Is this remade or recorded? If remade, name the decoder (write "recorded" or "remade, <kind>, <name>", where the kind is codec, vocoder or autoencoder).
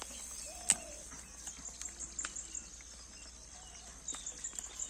recorded